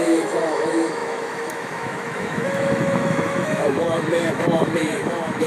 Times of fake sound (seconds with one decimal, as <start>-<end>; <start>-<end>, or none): 0.0-5.5